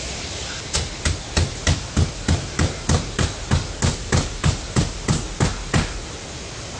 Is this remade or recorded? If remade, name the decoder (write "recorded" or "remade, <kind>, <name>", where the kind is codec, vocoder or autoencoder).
recorded